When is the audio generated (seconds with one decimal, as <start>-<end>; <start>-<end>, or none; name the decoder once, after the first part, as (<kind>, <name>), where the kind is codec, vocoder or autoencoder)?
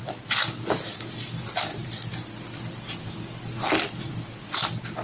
none